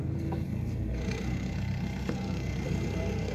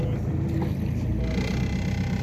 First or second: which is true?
second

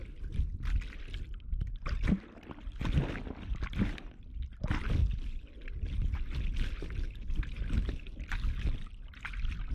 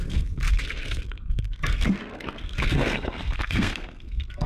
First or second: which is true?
first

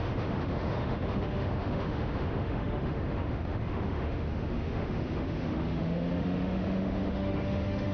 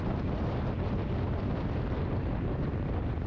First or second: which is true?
second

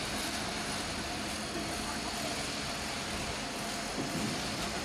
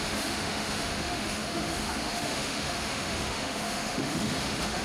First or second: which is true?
first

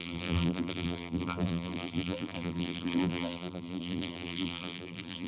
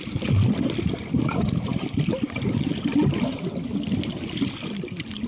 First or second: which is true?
second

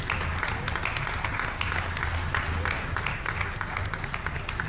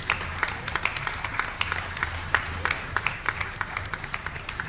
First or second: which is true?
first